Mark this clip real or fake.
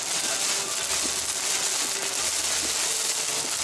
real